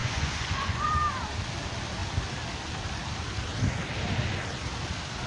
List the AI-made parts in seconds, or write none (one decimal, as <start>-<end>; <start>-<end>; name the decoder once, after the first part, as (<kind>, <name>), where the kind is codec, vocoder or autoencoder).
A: 0.0-0.9 (vocoder, Vocos)